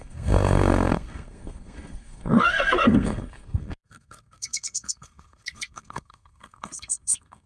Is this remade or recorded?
remade